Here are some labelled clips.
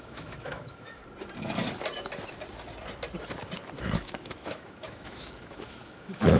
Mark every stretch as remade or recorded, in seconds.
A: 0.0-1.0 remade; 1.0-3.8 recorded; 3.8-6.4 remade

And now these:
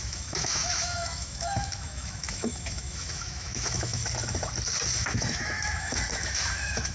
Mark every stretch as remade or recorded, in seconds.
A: 0.0-4.0 remade; 4.0-5.0 recorded; 5.0-6.9 remade